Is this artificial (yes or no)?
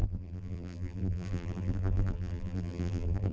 yes